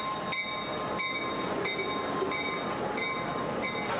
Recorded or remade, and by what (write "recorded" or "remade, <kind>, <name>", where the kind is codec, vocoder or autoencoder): recorded